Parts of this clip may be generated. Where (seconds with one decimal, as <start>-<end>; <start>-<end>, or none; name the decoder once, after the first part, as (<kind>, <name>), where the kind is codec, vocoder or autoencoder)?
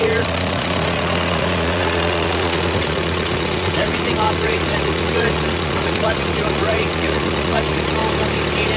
0.0-8.0 (vocoder, Vocos)